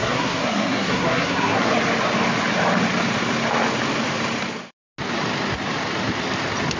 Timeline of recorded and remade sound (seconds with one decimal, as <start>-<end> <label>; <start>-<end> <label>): 0.0-1.7 remade; 1.7-6.8 recorded